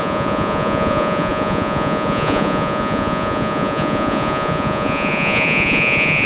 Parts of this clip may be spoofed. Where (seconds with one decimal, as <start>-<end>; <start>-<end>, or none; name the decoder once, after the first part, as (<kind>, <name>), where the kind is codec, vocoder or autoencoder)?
0.0-6.3 (vocoder, Vocos)